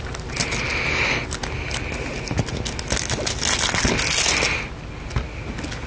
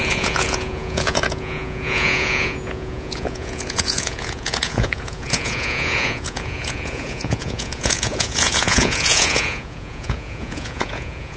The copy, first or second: second